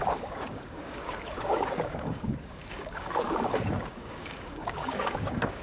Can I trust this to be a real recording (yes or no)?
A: no